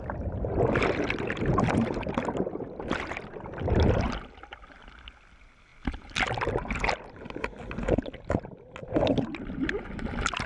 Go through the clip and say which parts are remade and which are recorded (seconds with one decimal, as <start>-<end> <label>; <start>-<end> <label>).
0.0-10.5 recorded